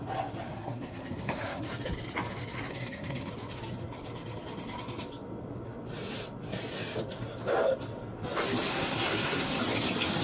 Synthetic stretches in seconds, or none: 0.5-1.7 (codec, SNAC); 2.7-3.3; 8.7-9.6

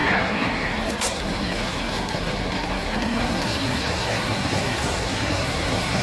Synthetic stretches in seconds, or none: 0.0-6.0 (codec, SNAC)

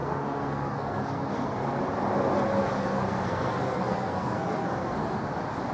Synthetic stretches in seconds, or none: 0.0-1.8 (codec, SNAC); 2.6-5.3

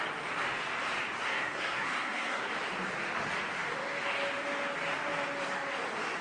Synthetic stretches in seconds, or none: 1.3-2.5 (codec, SNAC)

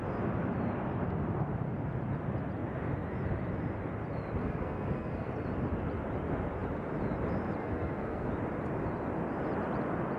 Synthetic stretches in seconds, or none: 4.4-5.3 (codec, SNAC); 7.6-8.3

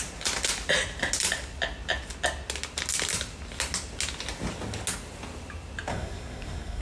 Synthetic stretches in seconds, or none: 5.9-6.8 (codec, SNAC)

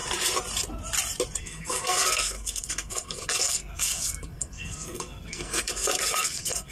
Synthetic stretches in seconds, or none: 1.4-6.7 (codec, SNAC)